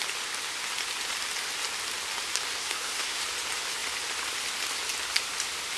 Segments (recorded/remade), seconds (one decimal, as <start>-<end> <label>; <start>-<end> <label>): 0.0-2.6 recorded; 2.6-3.2 remade; 3.2-5.8 recorded